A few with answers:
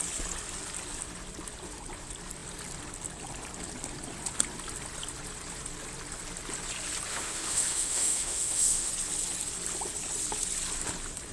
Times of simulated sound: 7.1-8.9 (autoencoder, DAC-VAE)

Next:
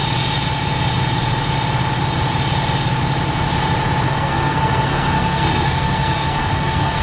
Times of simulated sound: 4.1-7.0 (codec, SNAC)

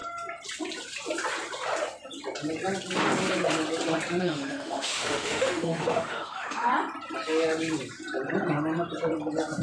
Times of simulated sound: 4.2-6.7 (autoencoder, DAC-VAE)

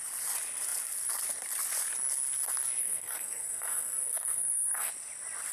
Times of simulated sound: 2.8-4.9 (codec, SNAC)

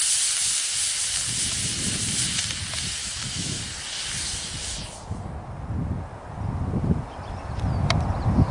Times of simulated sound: 3.0-3.6 (autoencoder, DAC-VAE)

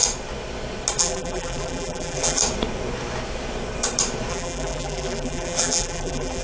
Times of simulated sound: 1.0-2.4 (vocoder, BigVGAN v2); 4.3-6.4

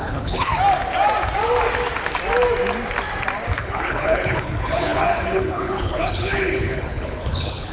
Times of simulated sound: 0.0-0.5 (codec, HILCodec); 3.6-7.7

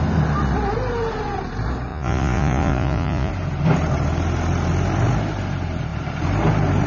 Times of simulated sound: 1.9-3.3 (vocoder, Vocos)